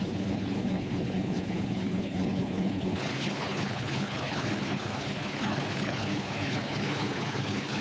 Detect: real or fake fake